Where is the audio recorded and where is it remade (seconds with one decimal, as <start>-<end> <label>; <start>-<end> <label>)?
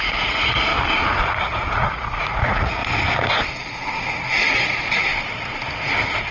0.0-0.7 remade; 0.7-1.4 recorded; 1.4-2.8 remade; 2.8-3.5 recorded; 3.5-5.1 remade; 5.1-6.3 recorded